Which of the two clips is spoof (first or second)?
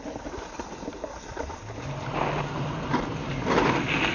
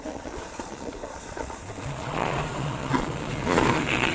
second